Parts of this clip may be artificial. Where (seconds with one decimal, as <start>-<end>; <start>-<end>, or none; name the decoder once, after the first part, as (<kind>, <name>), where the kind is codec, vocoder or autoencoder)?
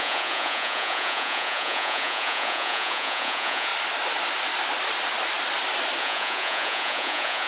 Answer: 0.0-3.7 (vocoder, Vocos); 6.0-7.5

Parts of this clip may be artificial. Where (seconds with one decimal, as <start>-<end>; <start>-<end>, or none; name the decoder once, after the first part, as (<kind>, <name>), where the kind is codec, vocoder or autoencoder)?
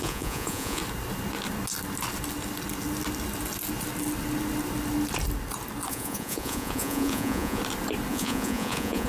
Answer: 0.0-0.8 (vocoder, Vocos); 5.9-7.6; 8.1-9.1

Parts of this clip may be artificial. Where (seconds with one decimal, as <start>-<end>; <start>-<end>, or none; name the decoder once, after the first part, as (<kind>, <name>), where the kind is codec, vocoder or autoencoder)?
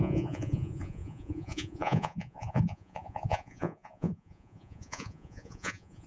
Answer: 0.0-6.1 (vocoder, Vocos)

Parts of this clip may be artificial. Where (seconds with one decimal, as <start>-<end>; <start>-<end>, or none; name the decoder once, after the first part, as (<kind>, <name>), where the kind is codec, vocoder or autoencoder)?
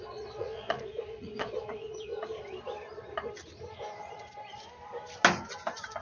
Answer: 0.0-2.1 (vocoder, Vocos)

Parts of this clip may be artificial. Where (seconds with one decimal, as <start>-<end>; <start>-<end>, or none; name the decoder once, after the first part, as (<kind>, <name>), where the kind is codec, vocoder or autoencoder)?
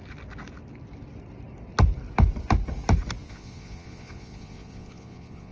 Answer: 3.3-5.5 (vocoder, Vocos)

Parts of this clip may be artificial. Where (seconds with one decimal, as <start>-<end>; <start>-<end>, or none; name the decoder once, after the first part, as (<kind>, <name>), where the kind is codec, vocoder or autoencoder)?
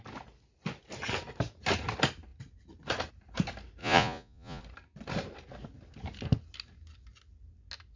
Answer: 3.8-4.6 (vocoder, Vocos)